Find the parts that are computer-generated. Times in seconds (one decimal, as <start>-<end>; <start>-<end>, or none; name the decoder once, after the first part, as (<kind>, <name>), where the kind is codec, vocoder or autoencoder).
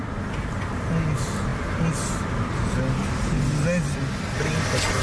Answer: none